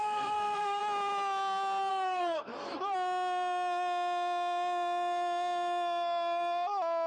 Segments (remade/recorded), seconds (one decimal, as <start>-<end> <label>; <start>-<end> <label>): 0.0-0.8 remade; 0.8-1.9 recorded; 1.9-2.5 remade; 2.5-7.1 recorded